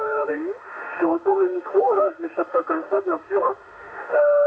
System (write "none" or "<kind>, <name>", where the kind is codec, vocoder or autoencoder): autoencoder, DAC-VAE